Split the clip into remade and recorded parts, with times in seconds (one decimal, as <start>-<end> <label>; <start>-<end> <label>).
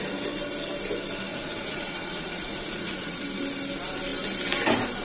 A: 0.0-1.3 recorded; 1.3-3.2 remade; 3.2-5.0 recorded